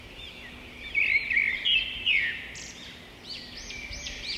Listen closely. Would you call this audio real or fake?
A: fake